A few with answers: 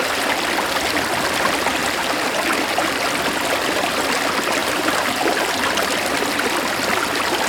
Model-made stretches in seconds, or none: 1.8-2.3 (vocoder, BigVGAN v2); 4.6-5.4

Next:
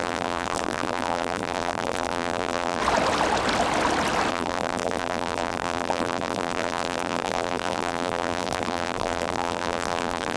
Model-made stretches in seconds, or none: 0.0-2.8 (vocoder, BigVGAN v2); 4.3-10.4